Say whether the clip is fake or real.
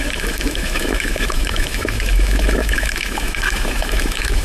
fake